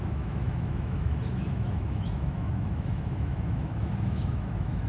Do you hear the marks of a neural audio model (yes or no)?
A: yes